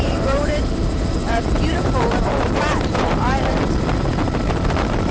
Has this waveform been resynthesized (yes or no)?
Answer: yes